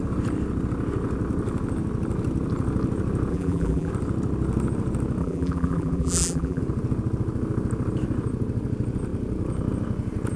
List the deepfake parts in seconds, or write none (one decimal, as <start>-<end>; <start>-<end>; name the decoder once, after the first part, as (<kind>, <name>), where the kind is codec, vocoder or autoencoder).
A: 3.3-3.9 (vocoder, BigVGAN v2); 5.2-6.6